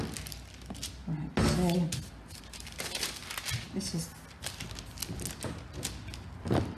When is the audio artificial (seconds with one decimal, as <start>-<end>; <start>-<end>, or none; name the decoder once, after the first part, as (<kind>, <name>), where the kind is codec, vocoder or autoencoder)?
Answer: none